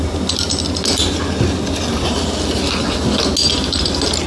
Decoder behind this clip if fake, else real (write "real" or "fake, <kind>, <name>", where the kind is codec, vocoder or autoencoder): real